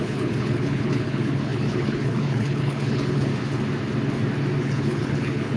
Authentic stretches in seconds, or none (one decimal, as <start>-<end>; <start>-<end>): 3.3-4.6

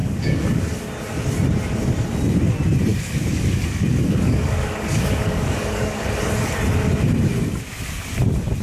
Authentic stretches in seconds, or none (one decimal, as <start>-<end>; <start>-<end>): 0.6-2.9; 6.1-8.6

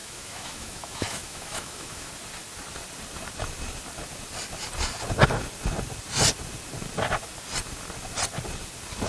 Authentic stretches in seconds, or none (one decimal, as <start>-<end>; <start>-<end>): 2.1-9.1

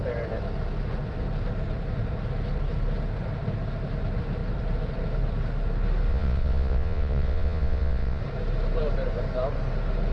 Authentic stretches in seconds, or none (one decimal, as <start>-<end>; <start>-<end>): 0.0-6.1; 8.2-10.1

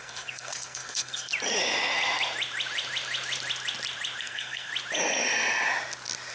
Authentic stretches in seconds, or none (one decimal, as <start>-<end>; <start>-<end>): 1.3-4.2; 4.7-6.3

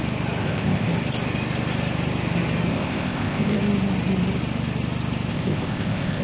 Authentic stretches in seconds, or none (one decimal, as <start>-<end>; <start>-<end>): 0.0-0.4; 0.9-2.7; 3.6-5.3

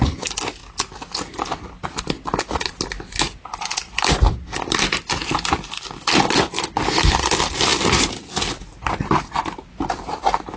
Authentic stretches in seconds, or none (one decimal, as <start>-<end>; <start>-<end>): 0.0-10.6

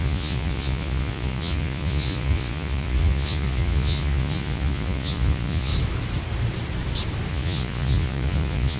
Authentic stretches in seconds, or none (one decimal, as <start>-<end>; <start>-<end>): 5.7-7.3